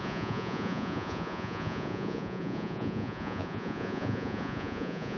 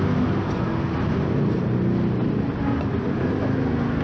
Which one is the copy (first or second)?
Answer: first